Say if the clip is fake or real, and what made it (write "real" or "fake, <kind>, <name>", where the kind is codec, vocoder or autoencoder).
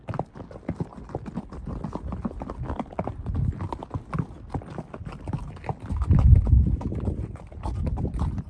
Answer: real